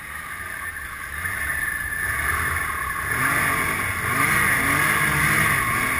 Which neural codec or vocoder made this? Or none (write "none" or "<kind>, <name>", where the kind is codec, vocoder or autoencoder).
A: none